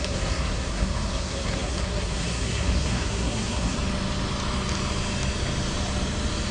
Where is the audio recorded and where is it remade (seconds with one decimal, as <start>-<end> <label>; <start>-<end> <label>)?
0.0-3.8 remade; 3.8-6.5 recorded